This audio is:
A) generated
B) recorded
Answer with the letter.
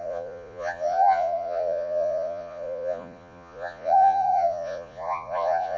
A